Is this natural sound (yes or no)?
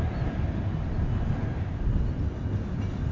yes